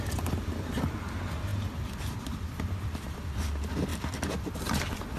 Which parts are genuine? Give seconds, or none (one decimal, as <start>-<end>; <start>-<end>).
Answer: none